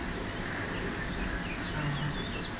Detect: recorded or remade recorded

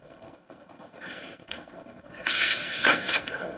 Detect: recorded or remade remade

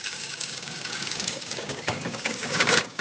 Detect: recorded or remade remade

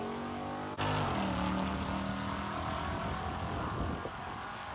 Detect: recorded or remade recorded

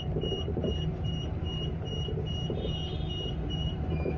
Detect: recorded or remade remade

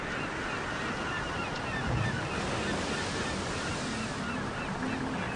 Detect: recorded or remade recorded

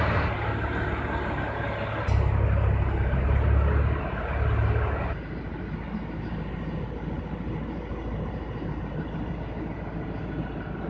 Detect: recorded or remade recorded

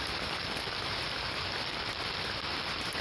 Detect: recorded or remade recorded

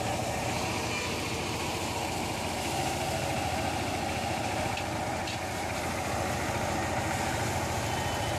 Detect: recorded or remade recorded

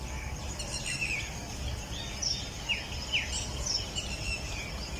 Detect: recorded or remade recorded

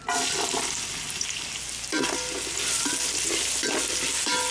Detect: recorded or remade recorded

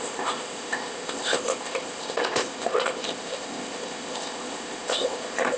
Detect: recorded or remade remade